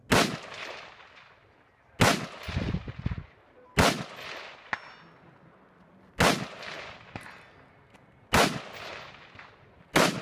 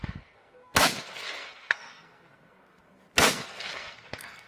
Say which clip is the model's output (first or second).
second